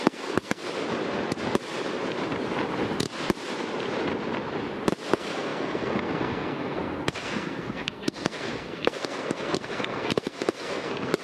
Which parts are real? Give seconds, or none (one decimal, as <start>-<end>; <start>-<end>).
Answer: 0.6-5.1